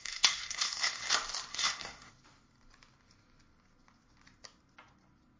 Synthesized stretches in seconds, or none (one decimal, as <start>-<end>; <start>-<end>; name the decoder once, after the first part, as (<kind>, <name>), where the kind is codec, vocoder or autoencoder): 0.0-1.1 (codec, SNAC); 1.5-2.1